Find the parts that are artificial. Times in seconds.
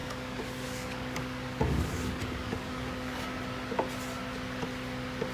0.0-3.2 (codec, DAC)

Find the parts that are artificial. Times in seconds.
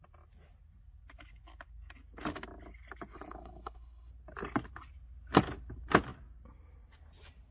3.1-4.1 (codec, HILCodec)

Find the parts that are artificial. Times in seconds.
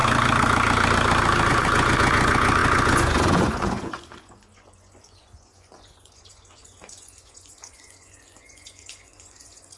1.5-9.8 (vocoder, Vocos)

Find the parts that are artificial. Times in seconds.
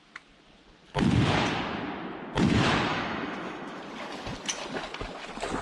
2.9-3.8 (autoencoder, DAC-VAE)